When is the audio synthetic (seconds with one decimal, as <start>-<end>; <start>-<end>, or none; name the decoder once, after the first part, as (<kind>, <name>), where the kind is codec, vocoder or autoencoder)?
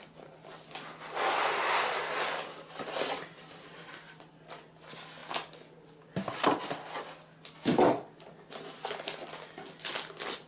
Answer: none